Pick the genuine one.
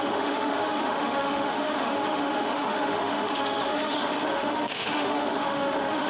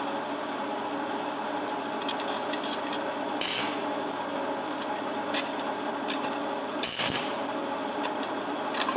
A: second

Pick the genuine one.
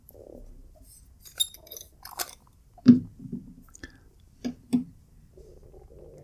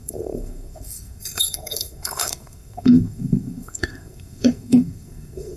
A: first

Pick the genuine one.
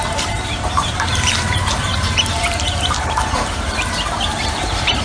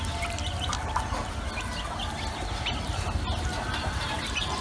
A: second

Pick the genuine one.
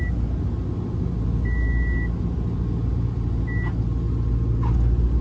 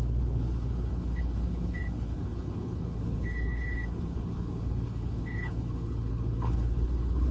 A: first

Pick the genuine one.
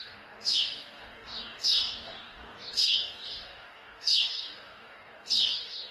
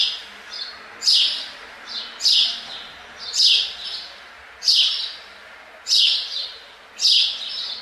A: second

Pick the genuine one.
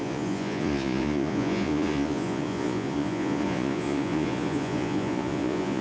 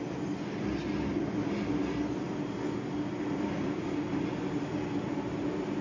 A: second